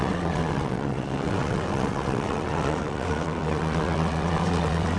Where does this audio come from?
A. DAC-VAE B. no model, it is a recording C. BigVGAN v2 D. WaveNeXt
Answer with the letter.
D